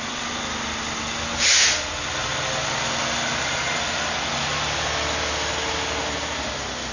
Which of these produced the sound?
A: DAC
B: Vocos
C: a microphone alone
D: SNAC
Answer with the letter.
C